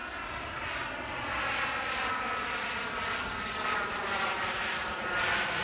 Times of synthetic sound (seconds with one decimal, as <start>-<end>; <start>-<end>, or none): none